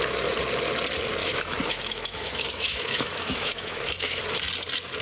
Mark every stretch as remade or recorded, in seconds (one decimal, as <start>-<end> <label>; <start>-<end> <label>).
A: 0.0-1.2 recorded; 1.2-4.2 remade; 4.2-5.0 recorded